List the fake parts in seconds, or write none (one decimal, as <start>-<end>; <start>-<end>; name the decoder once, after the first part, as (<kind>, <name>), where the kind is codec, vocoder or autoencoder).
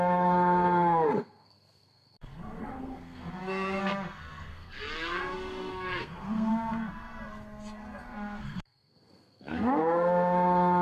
0.0-10.8 (codec, SNAC)